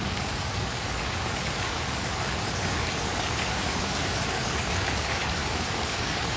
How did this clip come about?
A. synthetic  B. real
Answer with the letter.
A